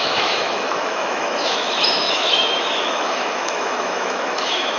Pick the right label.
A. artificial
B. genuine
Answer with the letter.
A